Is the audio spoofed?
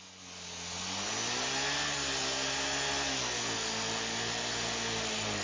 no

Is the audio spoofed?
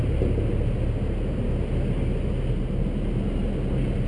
no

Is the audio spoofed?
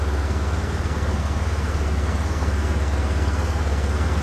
yes